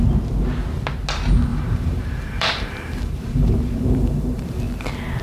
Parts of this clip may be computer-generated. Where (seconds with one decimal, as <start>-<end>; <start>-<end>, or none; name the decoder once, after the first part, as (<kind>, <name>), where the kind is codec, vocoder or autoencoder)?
1.5-4.6 (vocoder, BigVGAN v2)